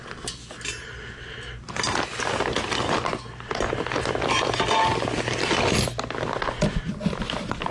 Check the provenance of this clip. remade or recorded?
recorded